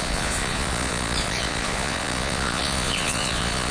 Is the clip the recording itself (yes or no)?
no